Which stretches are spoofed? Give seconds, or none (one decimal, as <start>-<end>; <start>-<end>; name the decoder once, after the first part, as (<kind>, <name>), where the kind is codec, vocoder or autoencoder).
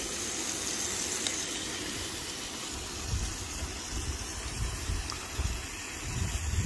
4.3-5.5 (vocoder, BigVGAN v2)